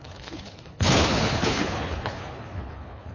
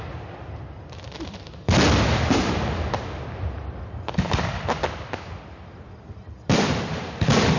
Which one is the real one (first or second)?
second